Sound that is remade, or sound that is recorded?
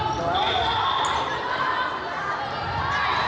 recorded